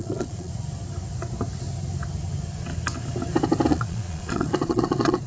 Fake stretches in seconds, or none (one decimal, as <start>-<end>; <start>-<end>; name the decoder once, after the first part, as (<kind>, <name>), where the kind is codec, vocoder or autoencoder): 0.0-0.5 (vocoder, Vocos); 3.7-5.3